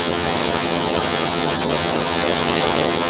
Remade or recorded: remade